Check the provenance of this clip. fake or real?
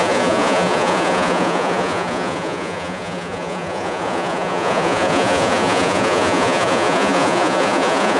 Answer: fake